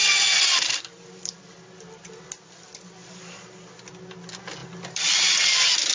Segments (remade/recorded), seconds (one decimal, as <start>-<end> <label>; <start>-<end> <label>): 0.0-5.9 recorded